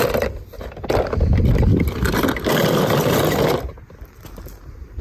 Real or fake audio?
real